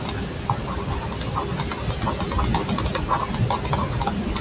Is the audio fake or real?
real